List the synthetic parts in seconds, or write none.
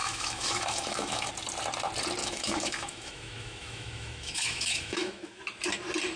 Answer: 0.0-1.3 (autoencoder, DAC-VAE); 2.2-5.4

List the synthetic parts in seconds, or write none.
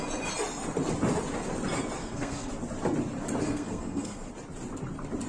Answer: 2.0-2.5 (codec, SNAC); 3.4-4.3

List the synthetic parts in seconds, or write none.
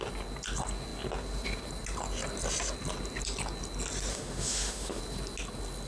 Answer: 4.1-5.0 (autoencoder, DAC-VAE)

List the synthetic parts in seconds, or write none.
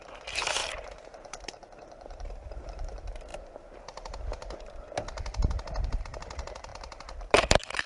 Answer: 0.6-2.3 (vocoder, BigVGAN v2); 6.7-7.9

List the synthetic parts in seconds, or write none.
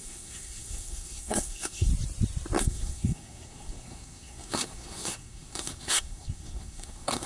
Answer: 0.0-1.9 (codec, SNAC); 2.6-7.3